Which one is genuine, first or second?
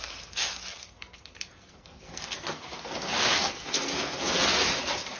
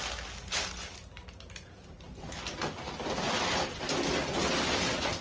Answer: second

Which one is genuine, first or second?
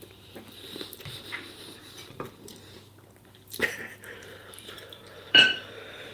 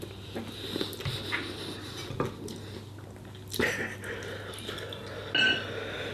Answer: second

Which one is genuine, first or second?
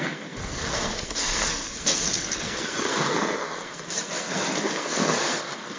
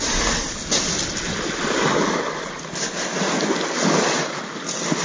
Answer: second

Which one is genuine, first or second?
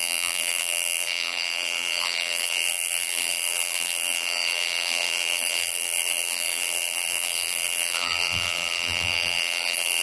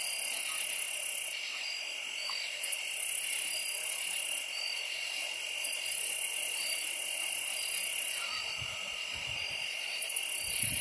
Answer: second